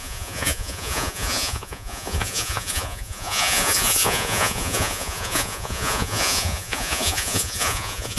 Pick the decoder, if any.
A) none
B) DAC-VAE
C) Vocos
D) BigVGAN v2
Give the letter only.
C